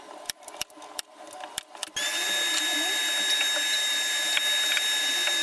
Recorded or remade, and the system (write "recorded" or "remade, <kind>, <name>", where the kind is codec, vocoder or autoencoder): recorded